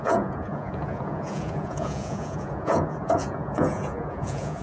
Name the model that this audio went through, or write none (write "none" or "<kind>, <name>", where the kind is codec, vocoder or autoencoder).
vocoder, Vocos